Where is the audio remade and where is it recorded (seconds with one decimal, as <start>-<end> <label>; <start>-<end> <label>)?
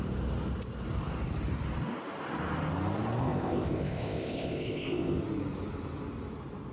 0.0-3.2 recorded; 3.2-5.2 remade; 5.2-6.7 recorded